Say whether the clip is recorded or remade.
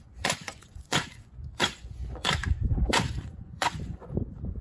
remade